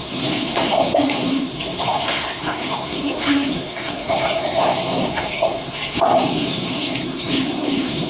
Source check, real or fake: fake